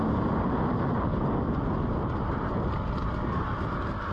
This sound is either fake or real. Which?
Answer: real